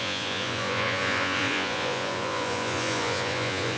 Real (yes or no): no